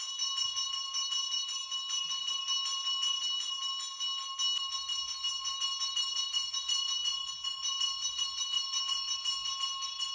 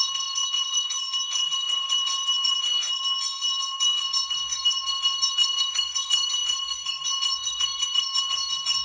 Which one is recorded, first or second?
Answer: first